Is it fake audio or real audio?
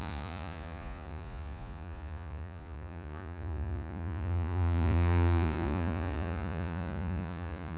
fake